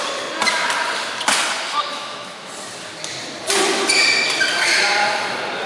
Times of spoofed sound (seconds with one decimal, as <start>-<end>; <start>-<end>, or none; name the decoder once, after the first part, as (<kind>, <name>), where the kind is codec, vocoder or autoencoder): 1.9-2.5 (autoencoder, DAC-VAE)

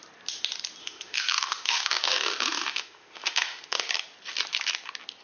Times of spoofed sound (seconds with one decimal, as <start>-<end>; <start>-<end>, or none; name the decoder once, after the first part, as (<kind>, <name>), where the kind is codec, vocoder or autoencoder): 0.8-3.9 (autoencoder, DAC-VAE)

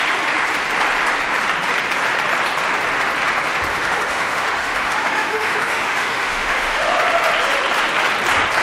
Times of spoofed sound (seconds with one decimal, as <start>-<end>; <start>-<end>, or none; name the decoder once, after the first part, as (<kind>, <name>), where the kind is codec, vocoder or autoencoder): 3.7-6.9 (autoencoder, DAC-VAE)

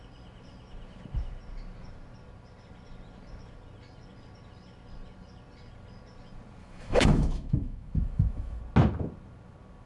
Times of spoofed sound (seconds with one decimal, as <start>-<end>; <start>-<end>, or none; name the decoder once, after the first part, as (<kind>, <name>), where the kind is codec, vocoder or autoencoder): 6.6-8.6 (autoencoder, DAC-VAE)

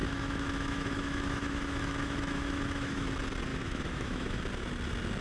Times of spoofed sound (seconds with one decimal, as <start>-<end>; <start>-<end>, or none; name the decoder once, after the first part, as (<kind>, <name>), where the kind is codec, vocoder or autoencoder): 0.0-3.1 (autoencoder, DAC-VAE); 3.5-4.4